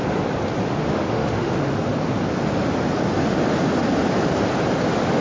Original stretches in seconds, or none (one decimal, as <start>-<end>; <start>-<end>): 0.0-0.7; 1.9-5.2